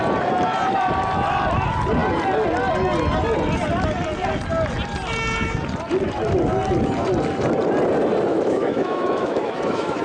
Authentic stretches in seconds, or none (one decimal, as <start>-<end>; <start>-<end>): 0.0-8.3